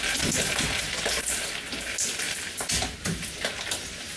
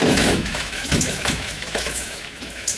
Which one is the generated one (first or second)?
second